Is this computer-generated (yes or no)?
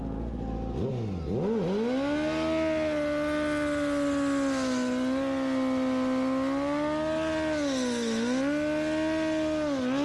no